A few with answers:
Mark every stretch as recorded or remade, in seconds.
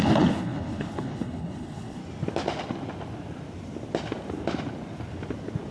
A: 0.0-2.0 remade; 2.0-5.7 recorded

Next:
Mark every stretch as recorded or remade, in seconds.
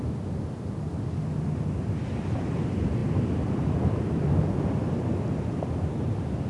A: 0.0-6.5 recorded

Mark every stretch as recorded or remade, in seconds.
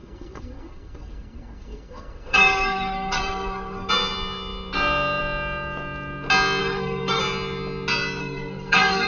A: 0.0-3.9 remade; 3.9-6.6 recorded; 6.6-7.2 remade; 7.2-8.2 recorded; 8.2-9.1 remade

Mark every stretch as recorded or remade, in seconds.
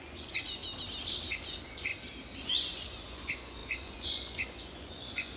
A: 0.0-0.6 remade; 0.6-1.3 recorded; 1.3-1.9 remade; 1.9-2.4 recorded; 2.4-5.4 remade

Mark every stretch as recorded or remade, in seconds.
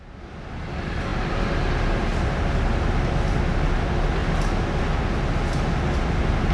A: 0.0-6.5 recorded